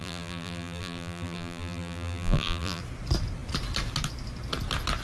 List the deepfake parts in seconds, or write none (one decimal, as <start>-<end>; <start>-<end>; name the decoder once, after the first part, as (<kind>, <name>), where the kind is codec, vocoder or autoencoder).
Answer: 0.0-2.8 (vocoder, BigVGAN v2)